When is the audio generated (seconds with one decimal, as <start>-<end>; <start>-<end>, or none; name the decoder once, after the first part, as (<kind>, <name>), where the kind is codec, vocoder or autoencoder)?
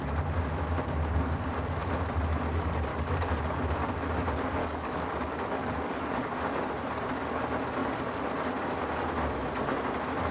2.9-3.9 (codec, DAC); 4.6-6.3